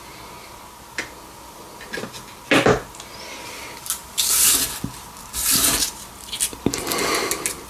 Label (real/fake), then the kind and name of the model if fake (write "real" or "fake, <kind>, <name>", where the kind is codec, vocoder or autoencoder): real